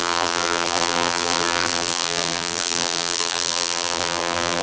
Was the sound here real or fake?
fake